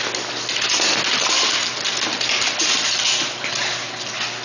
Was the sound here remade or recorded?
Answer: recorded